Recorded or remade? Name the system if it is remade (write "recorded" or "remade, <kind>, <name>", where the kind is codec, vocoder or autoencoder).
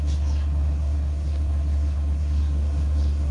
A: remade, codec, SNAC